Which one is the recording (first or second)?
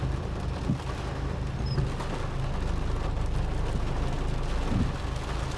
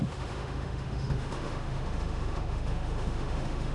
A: first